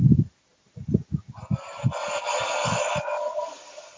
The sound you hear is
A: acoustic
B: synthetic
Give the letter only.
A